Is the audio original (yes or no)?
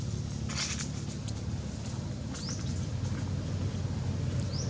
yes